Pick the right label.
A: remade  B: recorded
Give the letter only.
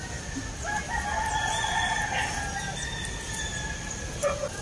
B